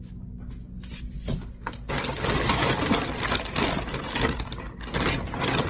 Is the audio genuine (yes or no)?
yes